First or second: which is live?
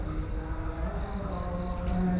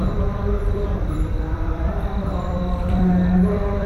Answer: first